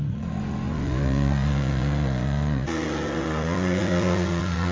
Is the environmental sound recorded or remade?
remade